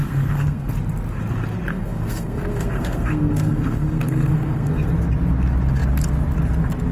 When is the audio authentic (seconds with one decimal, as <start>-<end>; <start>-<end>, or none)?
0.7-1.7; 4.9-6.9